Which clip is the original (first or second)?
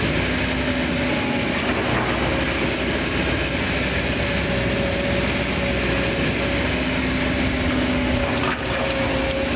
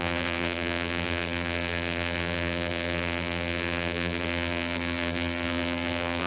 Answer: first